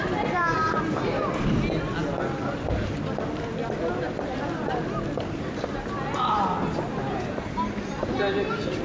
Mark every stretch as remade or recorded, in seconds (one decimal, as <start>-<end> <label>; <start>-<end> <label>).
0.0-8.8 recorded